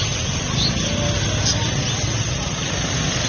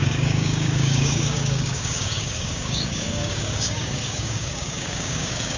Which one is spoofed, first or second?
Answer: second